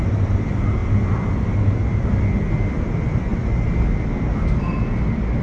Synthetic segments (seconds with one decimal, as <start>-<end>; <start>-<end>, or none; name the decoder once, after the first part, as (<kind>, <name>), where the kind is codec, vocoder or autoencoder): none